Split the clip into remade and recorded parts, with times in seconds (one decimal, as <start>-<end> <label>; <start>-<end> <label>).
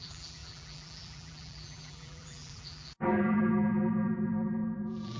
0.0-5.2 remade